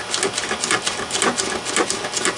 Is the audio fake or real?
real